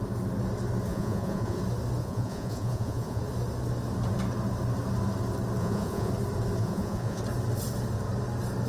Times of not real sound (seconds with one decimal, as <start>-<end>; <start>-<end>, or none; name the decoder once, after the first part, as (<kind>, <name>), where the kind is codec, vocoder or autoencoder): 0.9-1.6 (vocoder, Vocos); 2.0-3.2; 5.6-6.1; 6.6-7.2